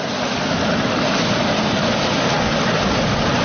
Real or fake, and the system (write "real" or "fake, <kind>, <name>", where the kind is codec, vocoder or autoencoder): real